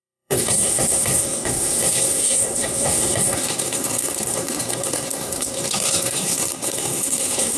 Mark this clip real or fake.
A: fake